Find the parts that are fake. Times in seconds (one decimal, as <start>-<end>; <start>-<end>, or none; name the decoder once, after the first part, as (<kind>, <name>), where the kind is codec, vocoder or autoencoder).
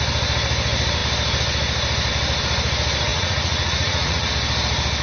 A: 3.1-4.3 (vocoder, Vocos)